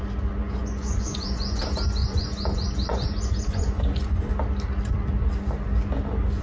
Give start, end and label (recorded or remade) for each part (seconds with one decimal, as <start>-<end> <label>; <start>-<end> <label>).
0.0-0.4 recorded; 0.4-1.6 remade; 1.6-2.0 recorded; 2.0-4.3 remade; 4.3-6.4 recorded